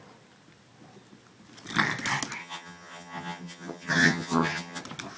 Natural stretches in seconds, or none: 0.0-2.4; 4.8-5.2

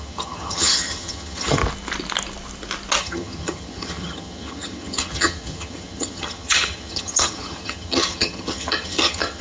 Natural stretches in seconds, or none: 1.6-3.0

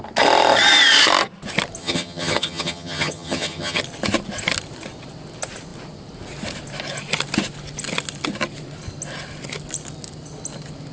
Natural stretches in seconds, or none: 0.0-1.8; 3.8-10.9

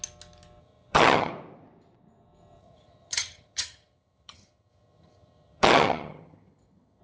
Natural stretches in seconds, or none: 0.0-0.6; 1.3-2.6

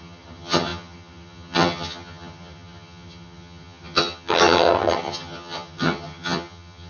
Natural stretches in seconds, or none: none